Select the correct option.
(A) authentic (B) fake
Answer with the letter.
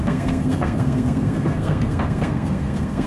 B